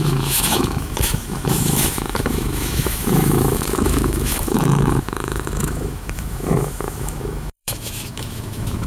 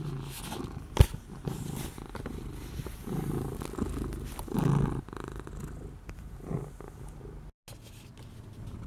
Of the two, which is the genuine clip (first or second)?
second